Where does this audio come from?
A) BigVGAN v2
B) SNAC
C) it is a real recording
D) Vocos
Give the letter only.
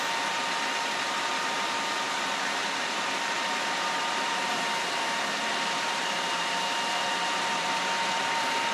A